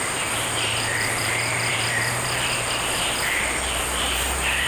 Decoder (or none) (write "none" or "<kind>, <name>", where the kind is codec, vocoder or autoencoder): vocoder, BigVGAN v2